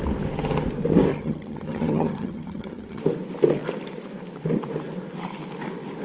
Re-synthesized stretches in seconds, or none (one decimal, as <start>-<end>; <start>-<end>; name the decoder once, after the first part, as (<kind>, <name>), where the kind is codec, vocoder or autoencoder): 1.1-3.0 (vocoder, HiFi-GAN)